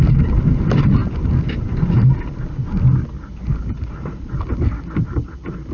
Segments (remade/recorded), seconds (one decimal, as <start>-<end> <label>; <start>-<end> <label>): 0.0-1.0 remade; 1.0-4.2 recorded; 4.2-5.7 remade